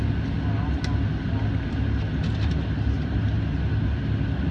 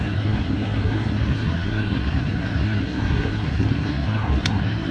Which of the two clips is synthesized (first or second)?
second